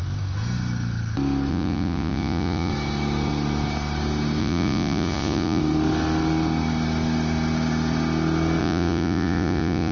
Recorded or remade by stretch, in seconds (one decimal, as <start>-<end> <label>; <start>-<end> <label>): 0.0-1.5 recorded; 1.5-2.7 remade; 2.7-4.4 recorded; 4.4-5.6 remade; 5.6-8.6 recorded; 8.6-9.9 remade

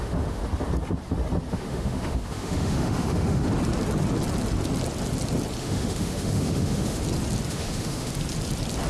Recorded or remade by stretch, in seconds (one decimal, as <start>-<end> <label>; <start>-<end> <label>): 0.0-0.4 remade; 0.4-1.5 recorded; 1.5-3.5 remade; 3.5-5.6 recorded; 5.6-7.0 remade; 7.0-7.5 recorded; 7.5-8.1 remade; 8.1-8.9 recorded